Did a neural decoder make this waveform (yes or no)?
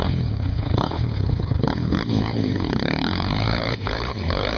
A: yes